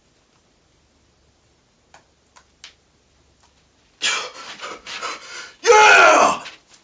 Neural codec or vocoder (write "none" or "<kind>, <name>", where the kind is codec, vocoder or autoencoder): none